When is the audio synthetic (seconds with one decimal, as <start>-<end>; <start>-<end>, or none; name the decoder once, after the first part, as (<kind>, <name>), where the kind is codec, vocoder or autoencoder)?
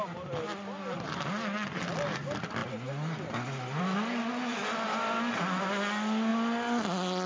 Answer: none